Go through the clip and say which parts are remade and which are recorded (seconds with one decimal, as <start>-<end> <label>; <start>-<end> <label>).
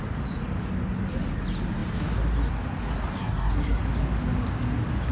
0.0-3.2 recorded; 3.2-3.8 remade; 3.8-5.1 recorded